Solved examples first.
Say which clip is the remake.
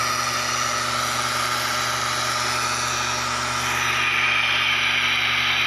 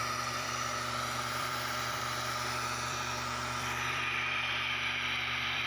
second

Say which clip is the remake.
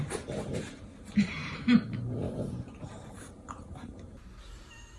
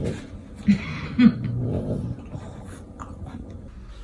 first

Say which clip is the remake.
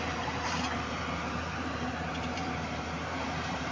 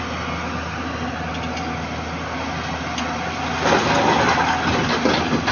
first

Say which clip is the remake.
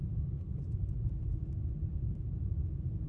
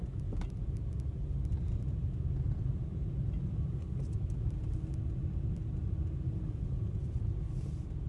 first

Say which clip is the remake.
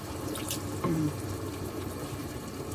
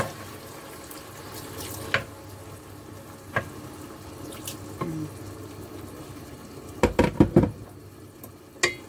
first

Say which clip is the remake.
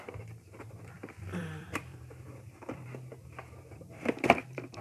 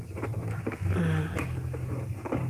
first